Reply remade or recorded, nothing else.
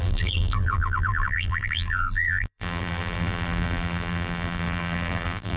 remade